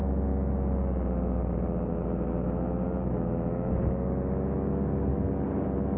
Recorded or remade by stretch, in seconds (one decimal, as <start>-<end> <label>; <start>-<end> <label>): 0.0-1.9 recorded; 1.9-5.1 remade; 5.1-6.0 recorded